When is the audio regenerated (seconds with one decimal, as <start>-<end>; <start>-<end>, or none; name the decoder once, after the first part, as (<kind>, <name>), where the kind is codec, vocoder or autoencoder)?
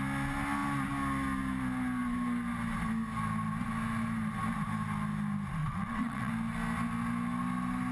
5.6-6.3 (vocoder, WaveNeXt)